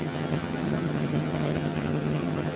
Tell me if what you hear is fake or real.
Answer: fake